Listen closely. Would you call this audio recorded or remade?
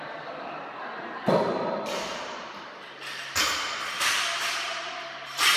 recorded